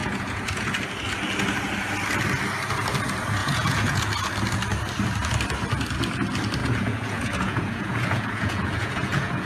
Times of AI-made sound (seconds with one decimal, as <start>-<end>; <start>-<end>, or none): 0.0-0.7; 3.4-4.0; 6.6-9.5